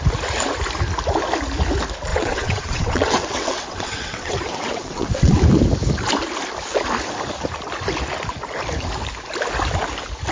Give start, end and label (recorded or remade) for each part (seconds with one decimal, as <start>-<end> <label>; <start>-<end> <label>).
0.0-2.1 recorded; 2.1-5.4 remade; 5.4-10.3 recorded